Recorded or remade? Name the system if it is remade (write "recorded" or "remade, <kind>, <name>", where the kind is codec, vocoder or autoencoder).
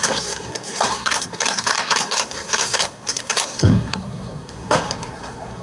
remade, codec, SNAC